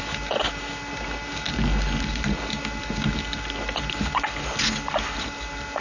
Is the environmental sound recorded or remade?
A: recorded